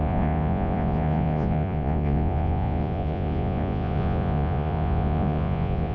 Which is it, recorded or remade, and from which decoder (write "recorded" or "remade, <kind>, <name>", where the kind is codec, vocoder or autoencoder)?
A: remade, vocoder, Vocos